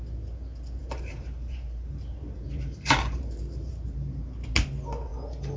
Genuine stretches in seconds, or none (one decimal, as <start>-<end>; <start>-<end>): 0.0-0.8; 4.2-5.6